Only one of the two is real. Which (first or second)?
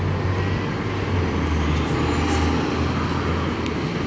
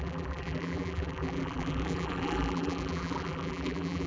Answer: first